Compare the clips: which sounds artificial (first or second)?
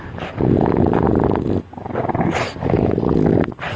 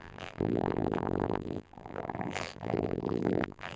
second